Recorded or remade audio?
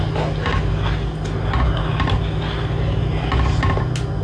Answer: recorded